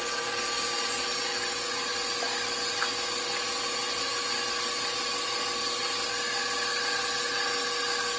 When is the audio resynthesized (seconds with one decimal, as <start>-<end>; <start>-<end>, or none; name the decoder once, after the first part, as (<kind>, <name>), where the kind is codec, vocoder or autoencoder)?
none